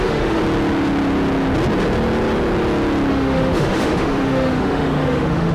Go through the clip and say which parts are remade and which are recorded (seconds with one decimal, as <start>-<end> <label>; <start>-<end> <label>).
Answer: 0.0-0.4 remade; 0.4-3.1 recorded; 3.1-5.5 remade